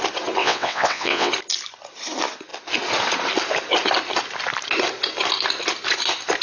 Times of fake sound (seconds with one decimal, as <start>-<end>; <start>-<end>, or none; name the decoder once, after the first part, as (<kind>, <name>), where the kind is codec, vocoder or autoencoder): 0.4-1.3 (vocoder, WaveNeXt)